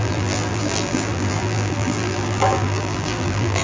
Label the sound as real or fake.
fake